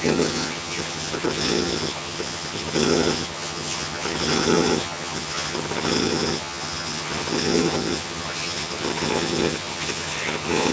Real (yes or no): no